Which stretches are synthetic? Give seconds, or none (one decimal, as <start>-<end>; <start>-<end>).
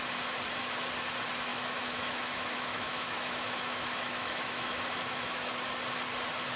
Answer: 1.5-5.5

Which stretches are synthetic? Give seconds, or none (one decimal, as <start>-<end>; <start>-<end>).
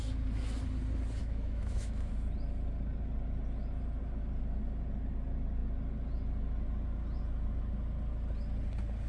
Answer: 1.2-2.1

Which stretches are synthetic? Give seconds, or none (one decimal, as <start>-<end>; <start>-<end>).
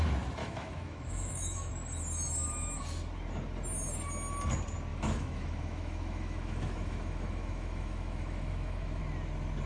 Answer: 0.4-1.7; 4.9-9.0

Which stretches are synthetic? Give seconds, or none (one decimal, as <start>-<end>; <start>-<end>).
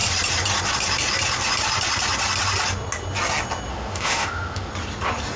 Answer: 3.7-4.7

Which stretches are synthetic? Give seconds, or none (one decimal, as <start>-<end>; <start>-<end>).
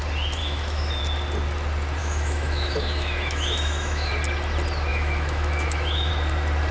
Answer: 0.4-1.0; 2.0-4.1; 4.9-6.1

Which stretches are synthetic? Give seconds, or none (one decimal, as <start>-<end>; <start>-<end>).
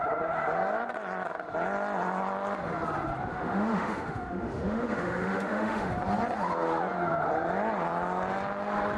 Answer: 3.3-5.9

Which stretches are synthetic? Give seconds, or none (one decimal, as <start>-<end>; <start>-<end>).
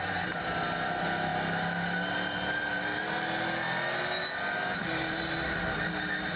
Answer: none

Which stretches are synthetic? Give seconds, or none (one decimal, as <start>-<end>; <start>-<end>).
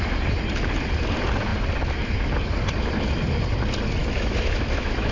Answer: 4.0-5.1